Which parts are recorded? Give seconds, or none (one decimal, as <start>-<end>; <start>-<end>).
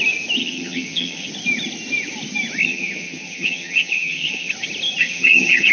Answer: 0.0-0.4; 1.3-2.6; 4.5-5.0